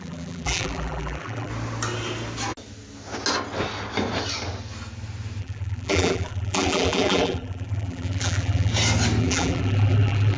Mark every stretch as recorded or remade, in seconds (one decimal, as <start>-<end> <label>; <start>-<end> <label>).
0.0-1.5 remade; 1.5-5.4 recorded; 5.4-8.7 remade; 8.7-9.2 recorded; 9.2-10.4 remade